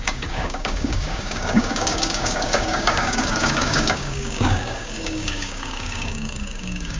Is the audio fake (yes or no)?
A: yes